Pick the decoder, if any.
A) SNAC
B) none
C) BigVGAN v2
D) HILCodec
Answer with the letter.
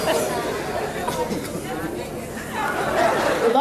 B